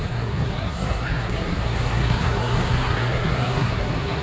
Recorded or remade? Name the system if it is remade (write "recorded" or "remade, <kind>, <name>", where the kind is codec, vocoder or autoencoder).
remade, codec, SNAC